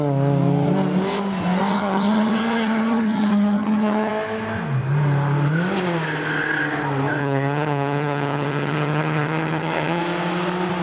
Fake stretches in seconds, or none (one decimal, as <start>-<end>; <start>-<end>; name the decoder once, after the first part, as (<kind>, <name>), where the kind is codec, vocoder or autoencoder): 1.7-4.1 (vocoder, HiFi-GAN); 7.2-10.0